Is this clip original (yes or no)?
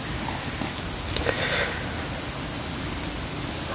yes